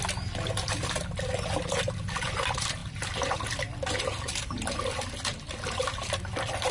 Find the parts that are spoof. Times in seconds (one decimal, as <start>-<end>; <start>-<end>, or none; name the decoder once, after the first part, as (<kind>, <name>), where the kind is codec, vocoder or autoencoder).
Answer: none